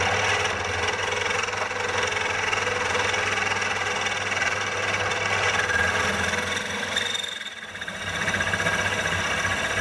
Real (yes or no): yes